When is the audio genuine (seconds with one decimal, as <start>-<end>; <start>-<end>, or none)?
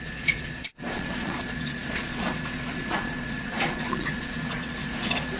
none